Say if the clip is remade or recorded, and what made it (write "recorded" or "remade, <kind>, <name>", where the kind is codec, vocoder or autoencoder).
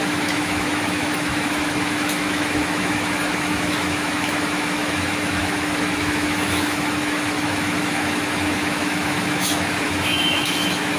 remade, autoencoder, DAC-VAE